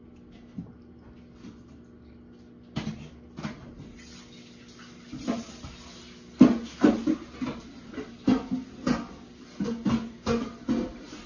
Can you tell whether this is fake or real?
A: real